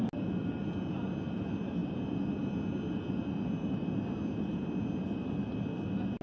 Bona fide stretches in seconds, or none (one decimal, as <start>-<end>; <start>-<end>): 0.0-6.2